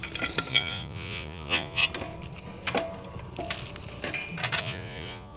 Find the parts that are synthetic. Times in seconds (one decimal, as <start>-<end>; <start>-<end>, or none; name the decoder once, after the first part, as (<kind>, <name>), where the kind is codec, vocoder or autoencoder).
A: 0.5-1.8 (vocoder, Vocos); 4.6-5.4